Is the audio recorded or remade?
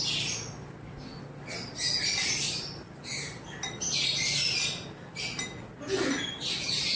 recorded